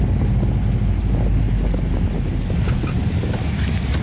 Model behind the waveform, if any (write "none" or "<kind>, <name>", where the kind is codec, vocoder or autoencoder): none